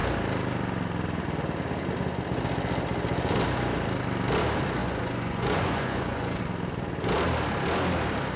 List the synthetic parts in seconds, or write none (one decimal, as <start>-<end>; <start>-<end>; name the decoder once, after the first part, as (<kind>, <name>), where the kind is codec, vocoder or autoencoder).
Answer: 4.8-6.4 (vocoder, Vocos)